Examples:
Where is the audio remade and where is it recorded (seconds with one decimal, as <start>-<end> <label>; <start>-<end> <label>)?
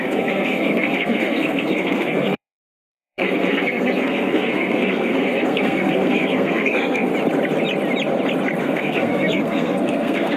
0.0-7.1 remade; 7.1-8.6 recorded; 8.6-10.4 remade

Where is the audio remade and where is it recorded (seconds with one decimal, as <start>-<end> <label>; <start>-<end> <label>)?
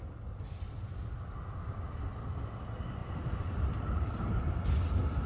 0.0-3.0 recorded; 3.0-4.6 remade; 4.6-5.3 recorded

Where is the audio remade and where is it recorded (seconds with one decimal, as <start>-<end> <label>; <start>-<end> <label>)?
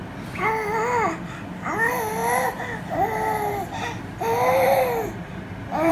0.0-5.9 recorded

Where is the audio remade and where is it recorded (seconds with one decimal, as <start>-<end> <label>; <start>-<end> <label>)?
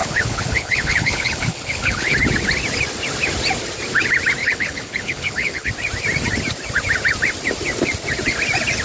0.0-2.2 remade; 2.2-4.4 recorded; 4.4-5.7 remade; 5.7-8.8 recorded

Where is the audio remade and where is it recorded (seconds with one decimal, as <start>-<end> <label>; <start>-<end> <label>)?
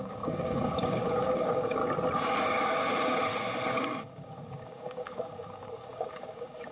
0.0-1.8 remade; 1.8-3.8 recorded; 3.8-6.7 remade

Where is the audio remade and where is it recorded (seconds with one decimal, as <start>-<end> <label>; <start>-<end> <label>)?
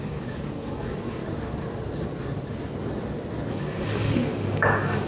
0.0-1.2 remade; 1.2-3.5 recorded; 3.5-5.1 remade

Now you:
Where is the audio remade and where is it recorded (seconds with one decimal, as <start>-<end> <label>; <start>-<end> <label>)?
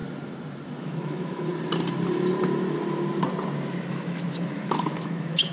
0.0-0.8 recorded; 0.8-1.5 remade; 1.5-3.9 recorded; 3.9-5.5 remade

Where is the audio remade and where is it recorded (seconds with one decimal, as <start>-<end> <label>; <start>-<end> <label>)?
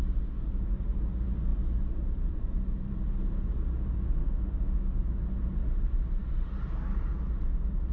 0.0-4.2 recorded; 4.2-5.0 remade; 5.0-7.9 recorded